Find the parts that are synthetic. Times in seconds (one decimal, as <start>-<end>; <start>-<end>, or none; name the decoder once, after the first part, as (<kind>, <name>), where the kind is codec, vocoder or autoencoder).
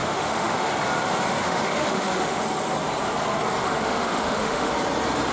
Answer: 0.0-0.7 (autoencoder, DAC-VAE); 1.4-2.4; 3.6-4.7